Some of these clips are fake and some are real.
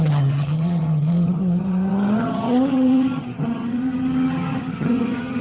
fake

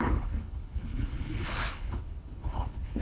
fake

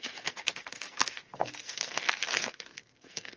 fake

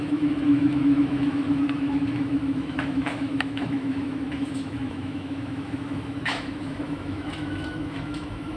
fake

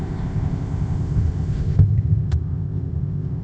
fake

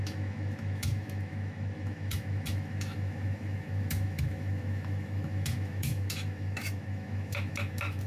fake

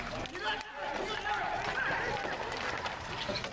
real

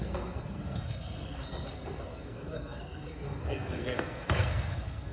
fake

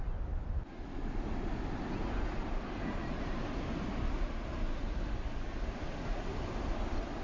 real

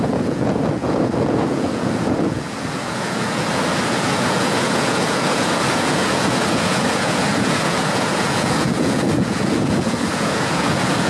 fake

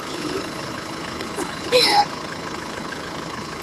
fake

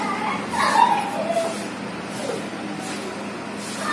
real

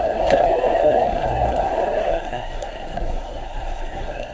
fake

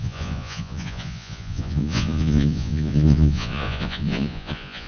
fake